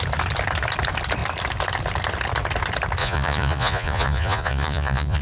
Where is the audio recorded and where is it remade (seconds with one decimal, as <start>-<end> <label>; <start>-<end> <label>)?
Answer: 0.0-3.0 recorded; 3.0-5.2 remade

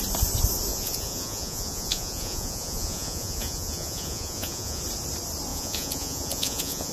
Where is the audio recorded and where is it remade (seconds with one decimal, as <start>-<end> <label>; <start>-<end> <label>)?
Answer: 0.0-0.7 recorded; 0.7-4.8 remade; 4.8-5.5 recorded; 5.5-6.9 remade

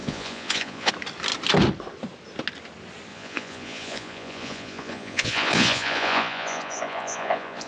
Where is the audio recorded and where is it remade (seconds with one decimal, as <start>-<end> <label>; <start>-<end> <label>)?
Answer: 0.0-0.9 remade; 0.9-3.1 recorded; 3.1-7.7 remade